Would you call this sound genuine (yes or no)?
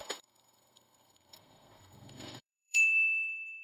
no